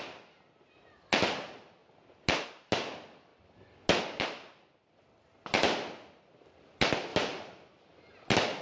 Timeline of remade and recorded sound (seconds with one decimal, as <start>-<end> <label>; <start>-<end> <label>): 0.0-8.6 recorded